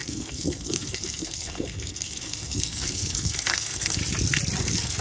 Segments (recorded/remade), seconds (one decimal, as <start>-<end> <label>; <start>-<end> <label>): 0.0-4.0 remade; 4.0-4.6 recorded; 4.6-5.0 remade